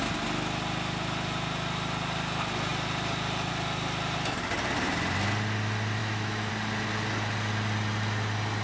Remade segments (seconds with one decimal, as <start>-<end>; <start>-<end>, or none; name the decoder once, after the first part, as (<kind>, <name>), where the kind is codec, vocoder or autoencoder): 6.0-6.5 (autoencoder, DAC-VAE)